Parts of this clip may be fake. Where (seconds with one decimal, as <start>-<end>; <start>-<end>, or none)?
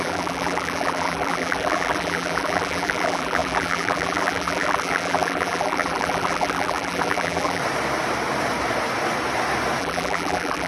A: 0.0-7.6; 9.8-10.7